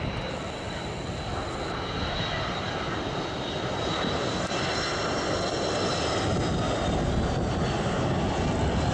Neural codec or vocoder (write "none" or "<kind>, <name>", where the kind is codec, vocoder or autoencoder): none